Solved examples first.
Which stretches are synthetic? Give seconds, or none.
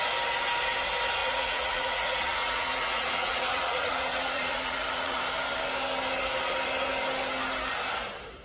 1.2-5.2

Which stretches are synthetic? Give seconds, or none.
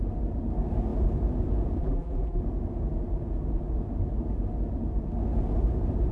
1.8-2.4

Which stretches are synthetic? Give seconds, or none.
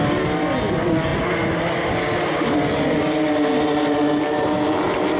none